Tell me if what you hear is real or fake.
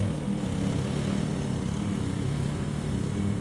real